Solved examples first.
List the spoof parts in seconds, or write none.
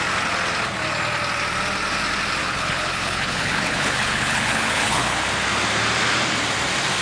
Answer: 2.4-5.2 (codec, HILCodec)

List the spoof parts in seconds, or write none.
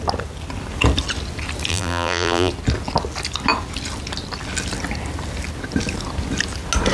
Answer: 1.7-2.5 (vocoder, BigVGAN v2)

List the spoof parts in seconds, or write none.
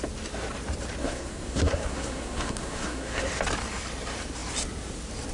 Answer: 1.0-3.2 (codec, SNAC)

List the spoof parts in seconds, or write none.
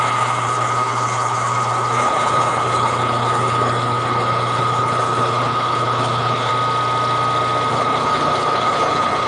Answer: 0.0-6.5 (codec, HILCodec); 7.7-9.3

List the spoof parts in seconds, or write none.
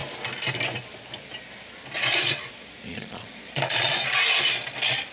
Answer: 2.9-4.0 (vocoder, Vocos)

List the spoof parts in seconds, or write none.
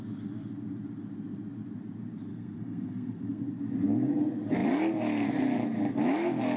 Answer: 2.3-3.4 (codec, SNAC)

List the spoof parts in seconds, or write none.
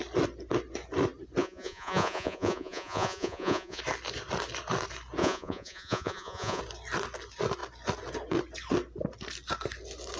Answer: 1.4-3.8 (vocoder, Vocos); 5.2-6.6